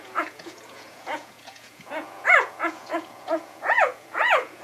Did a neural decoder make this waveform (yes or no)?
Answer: yes